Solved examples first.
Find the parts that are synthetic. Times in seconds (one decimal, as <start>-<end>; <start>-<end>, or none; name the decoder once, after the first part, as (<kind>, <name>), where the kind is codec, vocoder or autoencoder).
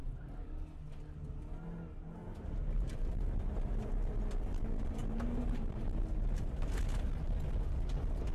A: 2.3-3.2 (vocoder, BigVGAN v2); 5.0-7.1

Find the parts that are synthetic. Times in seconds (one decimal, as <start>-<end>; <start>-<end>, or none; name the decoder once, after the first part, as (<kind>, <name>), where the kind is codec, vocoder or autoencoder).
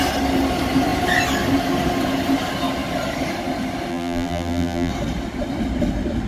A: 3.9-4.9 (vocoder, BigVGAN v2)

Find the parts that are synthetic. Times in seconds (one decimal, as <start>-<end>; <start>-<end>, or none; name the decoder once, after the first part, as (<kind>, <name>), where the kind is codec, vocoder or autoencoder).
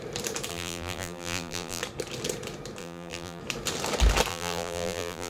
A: 0.5-1.8 (vocoder, BigVGAN v2); 2.8-3.4; 4.3-5.3